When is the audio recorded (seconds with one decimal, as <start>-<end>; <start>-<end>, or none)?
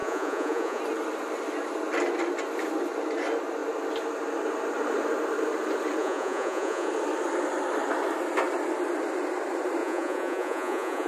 0.8-6.0; 6.9-9.8